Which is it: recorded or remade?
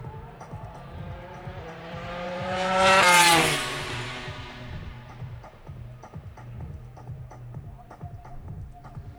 remade